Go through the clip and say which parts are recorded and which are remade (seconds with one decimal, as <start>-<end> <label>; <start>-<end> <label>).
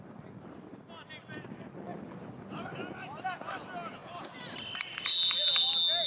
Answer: 0.0-6.1 recorded